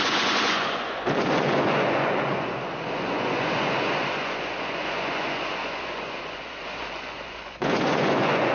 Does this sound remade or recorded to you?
remade